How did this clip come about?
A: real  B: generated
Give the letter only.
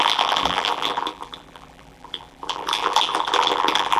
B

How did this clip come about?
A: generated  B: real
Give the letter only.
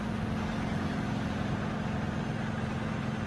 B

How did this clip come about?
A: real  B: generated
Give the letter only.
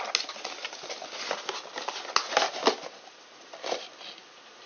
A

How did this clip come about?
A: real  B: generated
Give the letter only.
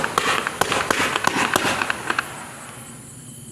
A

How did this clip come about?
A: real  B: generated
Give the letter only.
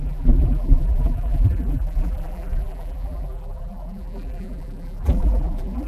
B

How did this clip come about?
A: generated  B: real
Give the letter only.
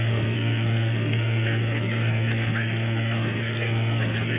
A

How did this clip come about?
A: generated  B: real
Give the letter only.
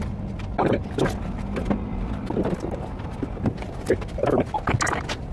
B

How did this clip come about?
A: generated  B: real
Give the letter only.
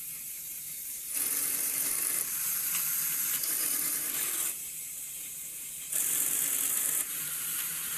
A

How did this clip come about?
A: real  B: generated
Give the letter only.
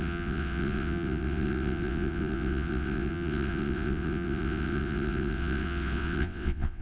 B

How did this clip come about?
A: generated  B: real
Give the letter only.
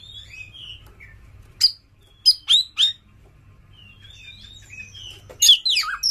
B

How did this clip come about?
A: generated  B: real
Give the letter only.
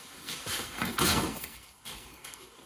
A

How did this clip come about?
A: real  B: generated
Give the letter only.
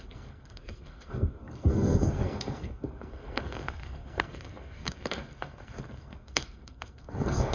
B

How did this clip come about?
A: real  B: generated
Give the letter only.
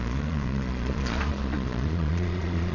B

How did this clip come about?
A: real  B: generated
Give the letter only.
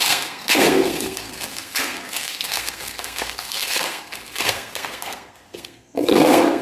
B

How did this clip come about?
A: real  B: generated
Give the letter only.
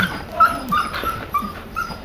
B